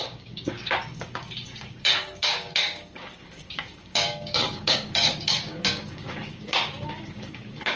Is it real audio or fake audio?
fake